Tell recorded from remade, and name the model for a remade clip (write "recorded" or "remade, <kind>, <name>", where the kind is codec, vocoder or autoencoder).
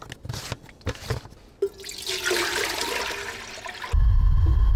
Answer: recorded